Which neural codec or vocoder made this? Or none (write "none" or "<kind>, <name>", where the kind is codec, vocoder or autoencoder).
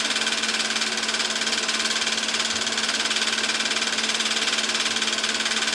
none